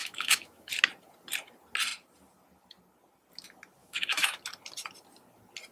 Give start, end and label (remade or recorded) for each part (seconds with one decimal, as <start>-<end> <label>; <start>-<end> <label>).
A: 0.0-0.7 remade; 0.7-3.8 recorded; 3.8-4.4 remade; 4.4-5.7 recorded